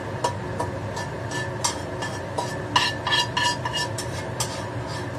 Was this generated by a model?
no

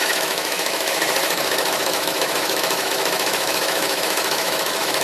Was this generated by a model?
yes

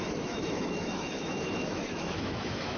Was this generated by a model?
yes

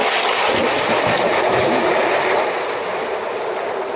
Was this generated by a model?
no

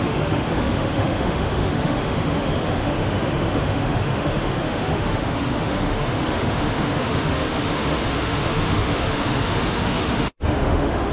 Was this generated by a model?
yes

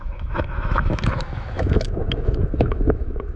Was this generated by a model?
yes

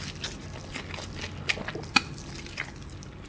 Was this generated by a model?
no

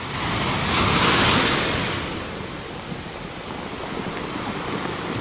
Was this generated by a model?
no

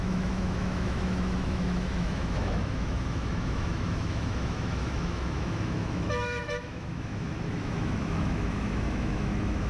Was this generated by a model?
yes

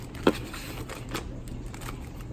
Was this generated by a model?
no